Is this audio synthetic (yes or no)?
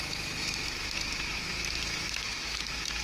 yes